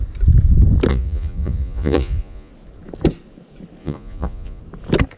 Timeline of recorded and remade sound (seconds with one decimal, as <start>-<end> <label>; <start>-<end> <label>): 0.0-0.9 recorded; 0.9-2.5 remade; 2.5-3.8 recorded; 3.8-4.6 remade; 4.6-5.2 recorded